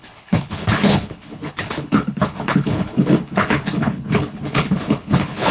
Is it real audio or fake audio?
fake